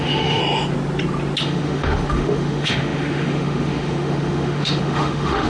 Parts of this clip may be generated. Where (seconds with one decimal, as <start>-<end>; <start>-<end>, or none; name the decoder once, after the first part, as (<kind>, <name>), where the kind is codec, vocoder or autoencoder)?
0.0-0.4 (autoencoder, DAC-VAE); 1.4-5.5